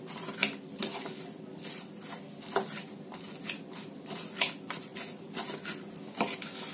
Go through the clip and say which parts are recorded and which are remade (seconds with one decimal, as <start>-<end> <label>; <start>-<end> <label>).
0.0-6.7 recorded